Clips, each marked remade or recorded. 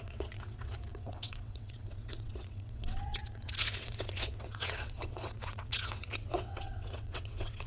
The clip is remade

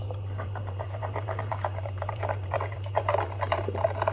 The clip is remade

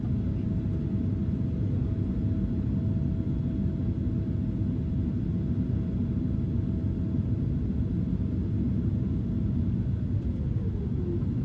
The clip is recorded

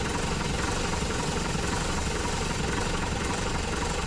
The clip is remade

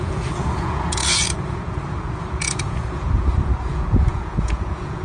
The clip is remade